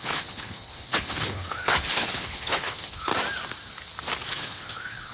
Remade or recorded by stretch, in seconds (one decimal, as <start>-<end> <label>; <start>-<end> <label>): 0.0-3.1 remade; 3.1-4.3 recorded; 4.3-5.1 remade

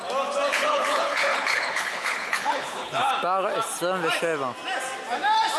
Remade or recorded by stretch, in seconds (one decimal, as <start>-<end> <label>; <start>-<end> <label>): 0.0-0.5 recorded; 0.5-3.1 remade; 3.1-5.6 recorded

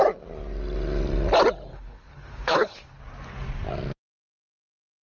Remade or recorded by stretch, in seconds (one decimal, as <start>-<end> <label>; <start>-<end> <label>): 0.0-1.7 recorded; 1.7-3.0 remade; 3.0-5.0 recorded

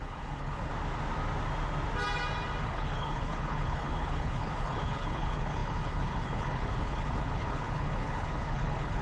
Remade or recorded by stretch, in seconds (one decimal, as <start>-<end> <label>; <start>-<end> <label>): 0.0-0.7 remade; 0.7-2.6 recorded; 2.6-9.0 remade

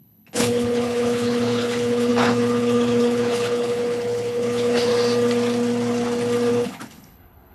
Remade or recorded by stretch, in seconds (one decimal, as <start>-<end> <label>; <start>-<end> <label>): 0.0-4.9 remade; 4.9-6.5 recorded; 6.5-7.5 remade